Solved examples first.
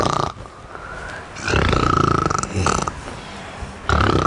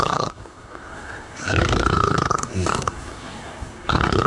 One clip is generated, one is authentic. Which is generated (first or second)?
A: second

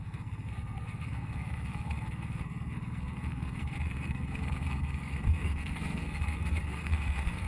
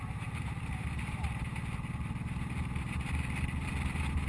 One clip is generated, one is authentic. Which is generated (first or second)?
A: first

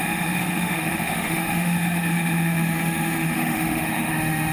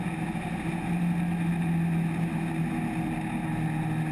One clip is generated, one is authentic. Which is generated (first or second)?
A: first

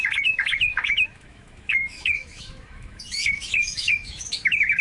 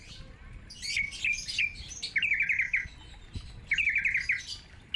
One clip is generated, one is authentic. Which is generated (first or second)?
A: first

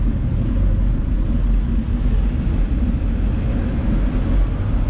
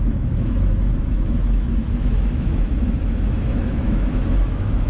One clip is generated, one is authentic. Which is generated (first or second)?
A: second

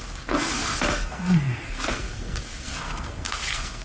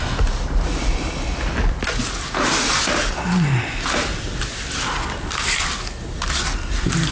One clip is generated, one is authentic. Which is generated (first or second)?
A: first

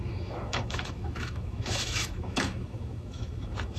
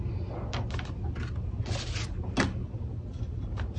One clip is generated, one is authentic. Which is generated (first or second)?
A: first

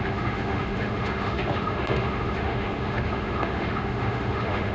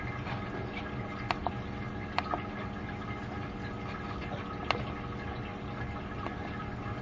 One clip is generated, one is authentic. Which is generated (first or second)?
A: first